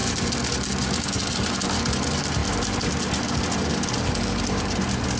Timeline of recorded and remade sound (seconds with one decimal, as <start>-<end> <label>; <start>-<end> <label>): 0.0-5.2 recorded